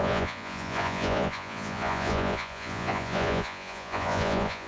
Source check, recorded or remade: remade